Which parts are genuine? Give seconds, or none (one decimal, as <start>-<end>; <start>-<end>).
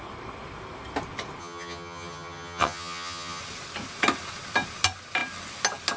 0.0-1.4; 3.4-6.0